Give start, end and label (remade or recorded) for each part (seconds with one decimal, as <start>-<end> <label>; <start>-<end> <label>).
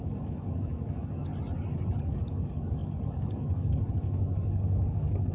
0.0-1.3 remade; 1.3-1.9 recorded; 1.9-5.3 remade